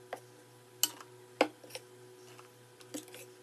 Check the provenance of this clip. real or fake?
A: real